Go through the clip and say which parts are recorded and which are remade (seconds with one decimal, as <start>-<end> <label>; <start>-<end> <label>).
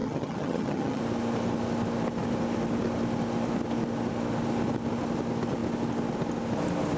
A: 0.0-1.0 remade; 1.0-7.0 recorded